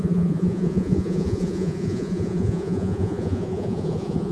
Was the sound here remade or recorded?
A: remade